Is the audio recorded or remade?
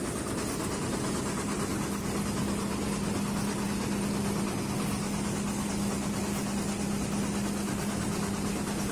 recorded